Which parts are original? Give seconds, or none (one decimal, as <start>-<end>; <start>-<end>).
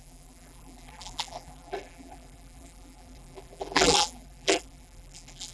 none